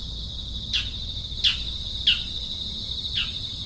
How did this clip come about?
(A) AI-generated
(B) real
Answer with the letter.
B